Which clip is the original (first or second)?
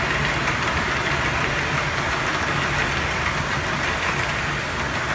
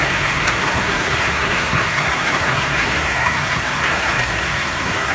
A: first